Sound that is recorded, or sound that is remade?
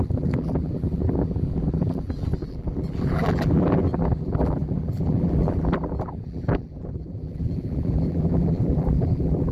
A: remade